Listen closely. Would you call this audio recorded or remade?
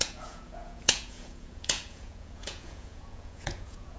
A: remade